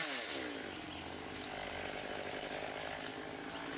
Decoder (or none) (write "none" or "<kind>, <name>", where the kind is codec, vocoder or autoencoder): none